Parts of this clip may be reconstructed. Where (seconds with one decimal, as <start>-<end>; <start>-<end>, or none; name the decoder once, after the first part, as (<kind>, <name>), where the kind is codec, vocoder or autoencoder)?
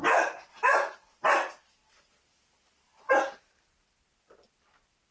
none